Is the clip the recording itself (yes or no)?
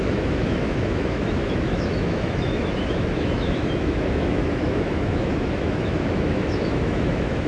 no